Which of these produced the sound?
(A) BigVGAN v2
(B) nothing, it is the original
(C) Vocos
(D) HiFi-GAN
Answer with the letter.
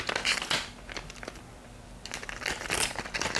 B